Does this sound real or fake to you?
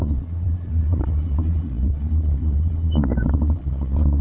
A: fake